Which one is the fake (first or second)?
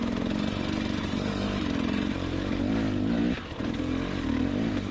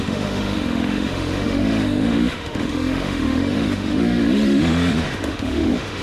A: second